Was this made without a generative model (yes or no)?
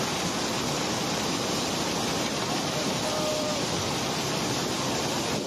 no